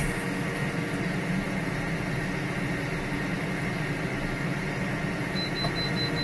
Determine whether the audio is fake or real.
real